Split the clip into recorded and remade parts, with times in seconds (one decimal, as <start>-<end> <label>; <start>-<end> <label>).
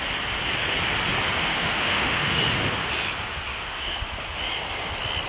0.0-1.4 recorded; 1.4-2.4 remade; 2.4-3.5 recorded; 3.5-4.1 remade; 4.1-5.3 recorded